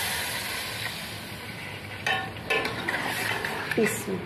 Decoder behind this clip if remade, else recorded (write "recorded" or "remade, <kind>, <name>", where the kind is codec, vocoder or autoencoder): recorded